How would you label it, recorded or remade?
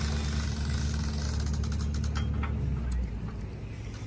recorded